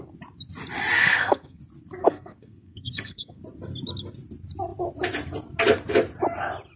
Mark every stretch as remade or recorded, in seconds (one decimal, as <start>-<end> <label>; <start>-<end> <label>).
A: 0.0-1.0 recorded; 1.0-1.6 remade; 1.6-2.0 recorded; 2.0-3.4 remade; 3.4-6.8 recorded